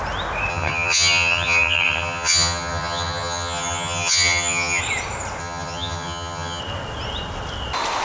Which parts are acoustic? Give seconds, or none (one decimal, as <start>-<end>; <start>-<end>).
0.0-0.5; 4.8-5.4; 6.6-8.0